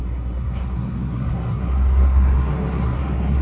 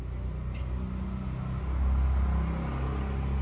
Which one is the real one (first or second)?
second